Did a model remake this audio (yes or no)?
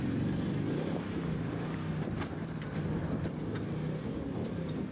no